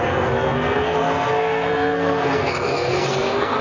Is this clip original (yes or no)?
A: no